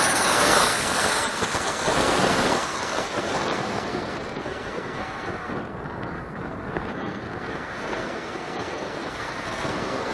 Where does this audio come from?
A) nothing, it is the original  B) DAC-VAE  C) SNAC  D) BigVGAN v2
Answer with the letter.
C